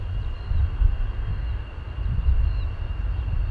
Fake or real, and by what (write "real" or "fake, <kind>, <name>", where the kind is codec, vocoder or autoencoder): real